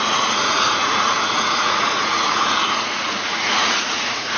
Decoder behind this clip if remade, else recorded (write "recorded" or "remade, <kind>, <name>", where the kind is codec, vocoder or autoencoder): remade, vocoder, Vocos